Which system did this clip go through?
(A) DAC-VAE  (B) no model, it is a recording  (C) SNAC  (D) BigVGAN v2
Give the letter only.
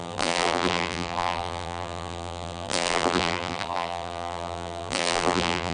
D